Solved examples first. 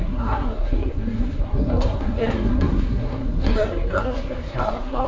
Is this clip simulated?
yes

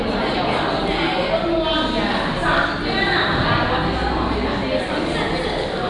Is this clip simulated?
no